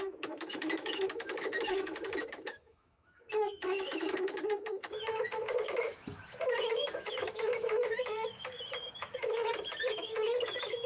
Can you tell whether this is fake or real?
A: fake